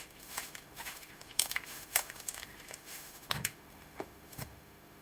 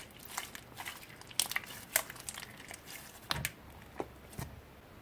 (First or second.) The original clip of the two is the second